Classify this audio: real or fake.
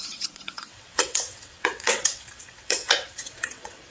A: fake